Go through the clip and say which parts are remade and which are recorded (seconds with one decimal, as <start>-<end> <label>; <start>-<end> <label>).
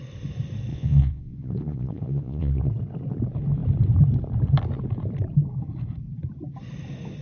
0.0-0.7 recorded; 0.7-2.7 remade; 2.7-7.2 recorded